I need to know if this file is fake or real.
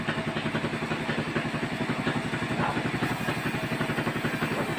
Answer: real